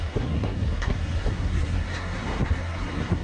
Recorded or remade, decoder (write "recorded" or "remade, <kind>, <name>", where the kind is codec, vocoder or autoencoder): remade, codec, SNAC